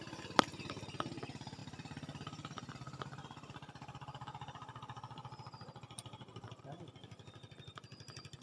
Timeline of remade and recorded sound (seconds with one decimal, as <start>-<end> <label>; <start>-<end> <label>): 0.0-1.6 recorded; 1.6-6.6 remade; 6.6-8.4 recorded